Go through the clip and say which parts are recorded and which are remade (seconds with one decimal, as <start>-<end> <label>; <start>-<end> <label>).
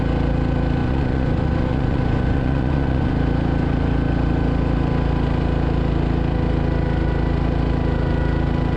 0.0-0.8 recorded; 0.8-3.1 remade; 3.1-8.8 recorded